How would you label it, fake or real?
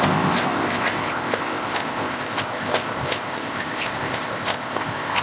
fake